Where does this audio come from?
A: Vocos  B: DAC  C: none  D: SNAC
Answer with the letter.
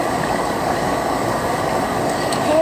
B